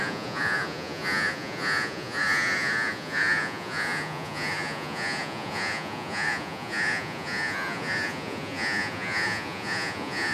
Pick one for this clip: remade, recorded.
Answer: remade